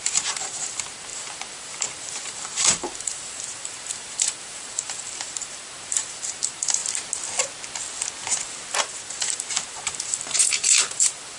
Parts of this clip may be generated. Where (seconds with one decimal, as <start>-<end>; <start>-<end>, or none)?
0.0-6.8; 8.8-11.4